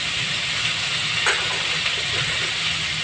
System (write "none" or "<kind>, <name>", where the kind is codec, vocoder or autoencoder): none